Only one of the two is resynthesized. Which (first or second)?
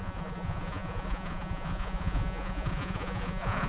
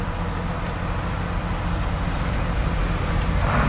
first